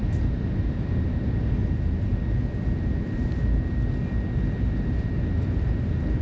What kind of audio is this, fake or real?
real